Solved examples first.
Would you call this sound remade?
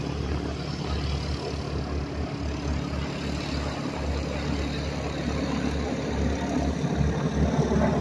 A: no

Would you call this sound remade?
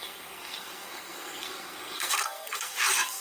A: yes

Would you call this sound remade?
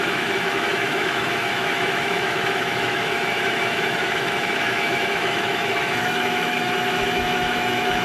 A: yes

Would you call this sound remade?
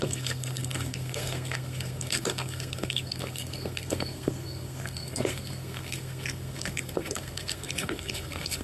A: yes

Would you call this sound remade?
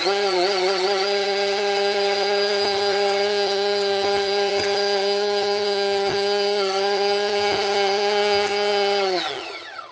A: yes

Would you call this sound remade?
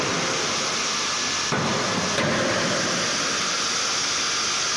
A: no